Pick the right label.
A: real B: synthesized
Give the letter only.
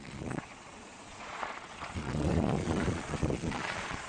B